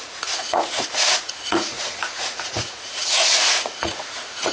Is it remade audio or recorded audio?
remade